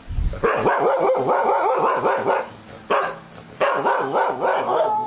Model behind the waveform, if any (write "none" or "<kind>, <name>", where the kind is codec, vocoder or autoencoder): none